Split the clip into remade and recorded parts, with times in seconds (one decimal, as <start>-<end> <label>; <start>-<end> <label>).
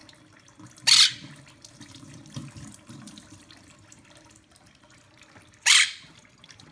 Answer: 0.0-1.1 recorded; 1.1-2.4 remade; 2.4-3.2 recorded; 3.2-6.7 remade